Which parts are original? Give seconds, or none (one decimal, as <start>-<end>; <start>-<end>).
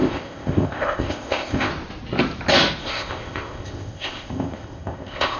1.7-2.8